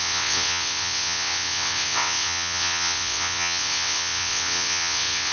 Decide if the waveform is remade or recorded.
remade